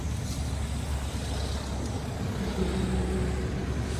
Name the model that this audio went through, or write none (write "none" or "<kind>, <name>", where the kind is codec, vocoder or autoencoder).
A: none